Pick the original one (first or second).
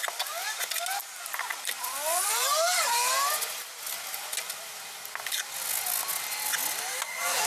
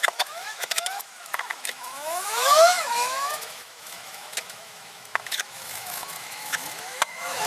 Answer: first